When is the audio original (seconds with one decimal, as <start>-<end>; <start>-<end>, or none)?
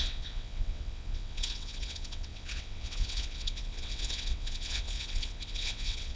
none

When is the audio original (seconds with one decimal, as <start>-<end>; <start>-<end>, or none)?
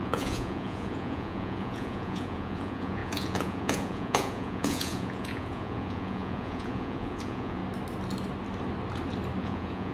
7.6-9.4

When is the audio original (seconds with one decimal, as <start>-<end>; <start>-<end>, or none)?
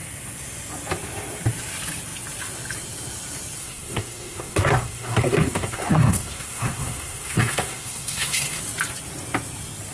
0.0-3.6; 8.6-9.9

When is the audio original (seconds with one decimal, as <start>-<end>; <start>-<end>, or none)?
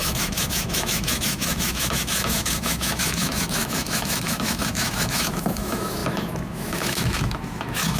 none